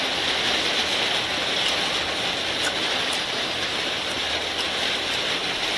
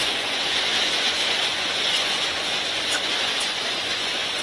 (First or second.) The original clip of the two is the first